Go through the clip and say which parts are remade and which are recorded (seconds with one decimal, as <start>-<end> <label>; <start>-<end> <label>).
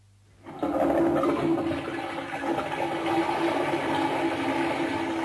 0.0-5.2 recorded